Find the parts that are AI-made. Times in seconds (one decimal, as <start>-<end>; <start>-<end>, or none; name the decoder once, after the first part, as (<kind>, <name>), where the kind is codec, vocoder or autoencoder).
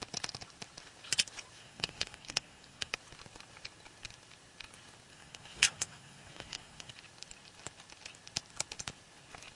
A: 1.6-2.9 (codec, SNAC); 5.1-6.9